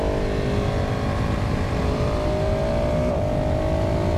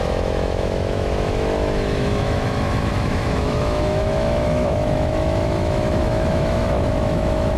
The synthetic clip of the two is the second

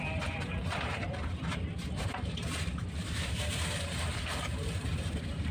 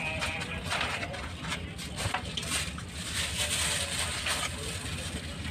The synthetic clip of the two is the first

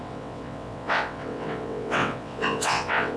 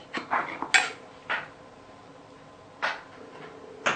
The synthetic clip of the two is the first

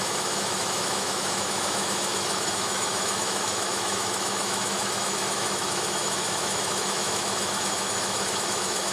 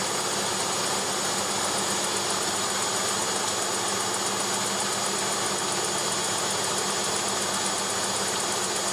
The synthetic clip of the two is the first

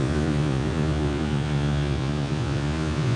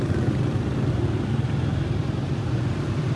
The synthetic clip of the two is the first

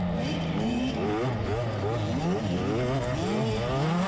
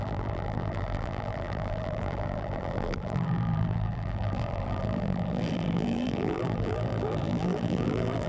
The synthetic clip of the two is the second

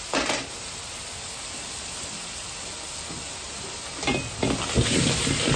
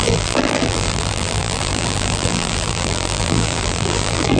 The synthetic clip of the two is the second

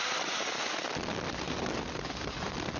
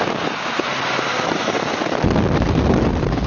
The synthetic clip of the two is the first